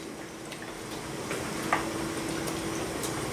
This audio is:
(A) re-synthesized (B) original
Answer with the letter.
B